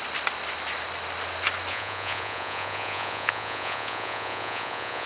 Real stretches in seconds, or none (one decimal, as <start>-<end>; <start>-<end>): 0.0-1.7